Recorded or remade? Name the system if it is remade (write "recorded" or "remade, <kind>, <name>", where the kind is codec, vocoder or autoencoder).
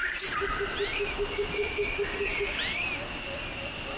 recorded